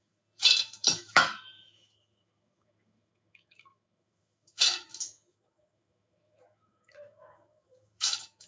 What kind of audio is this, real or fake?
fake